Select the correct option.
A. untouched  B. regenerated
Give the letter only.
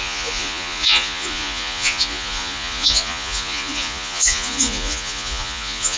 B